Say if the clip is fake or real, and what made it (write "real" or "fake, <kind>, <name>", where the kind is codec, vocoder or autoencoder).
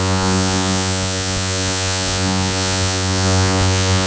fake, vocoder, Vocos